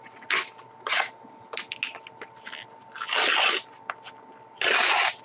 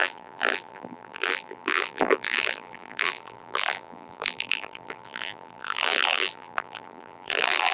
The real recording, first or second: first